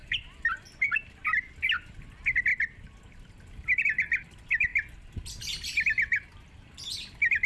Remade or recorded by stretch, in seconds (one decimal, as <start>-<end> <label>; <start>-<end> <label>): 0.0-7.5 recorded